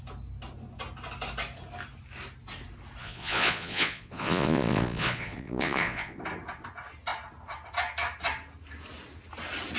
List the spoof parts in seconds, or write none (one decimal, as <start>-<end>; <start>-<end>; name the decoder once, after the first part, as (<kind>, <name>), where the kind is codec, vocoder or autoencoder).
3.0-6.2 (vocoder, Vocos)